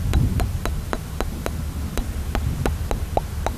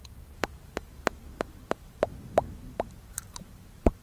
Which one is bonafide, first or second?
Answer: first